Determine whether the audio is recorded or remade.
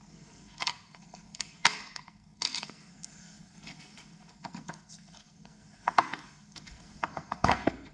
remade